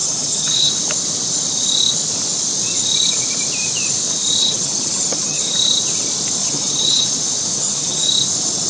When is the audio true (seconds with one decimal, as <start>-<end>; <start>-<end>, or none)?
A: 0.7-4.4; 5.4-6.4; 7.1-7.5; 8.1-8.7